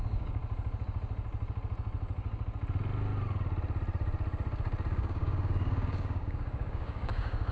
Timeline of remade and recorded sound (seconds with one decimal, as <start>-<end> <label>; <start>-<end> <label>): 0.0-0.4 remade; 0.4-4.9 recorded; 4.9-7.5 remade